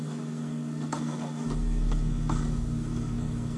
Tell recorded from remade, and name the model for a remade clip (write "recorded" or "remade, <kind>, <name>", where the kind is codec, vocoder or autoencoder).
remade, codec, SNAC